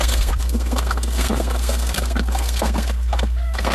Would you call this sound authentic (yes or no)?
no